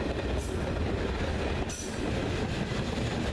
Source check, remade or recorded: recorded